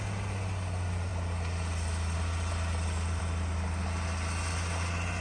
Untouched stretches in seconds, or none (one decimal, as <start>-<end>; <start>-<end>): 0.0-5.2